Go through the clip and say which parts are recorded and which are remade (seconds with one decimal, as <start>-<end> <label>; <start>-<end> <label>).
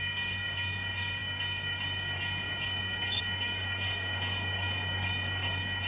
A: 0.0-5.9 remade